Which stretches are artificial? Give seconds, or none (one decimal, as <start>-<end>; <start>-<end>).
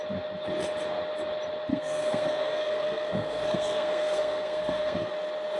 1.7-5.1